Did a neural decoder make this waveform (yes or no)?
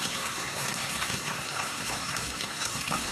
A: yes